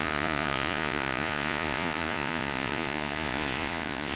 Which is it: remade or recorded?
remade